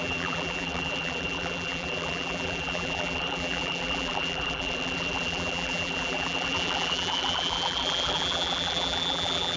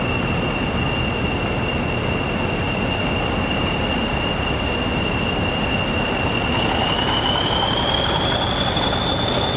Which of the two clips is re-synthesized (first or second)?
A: first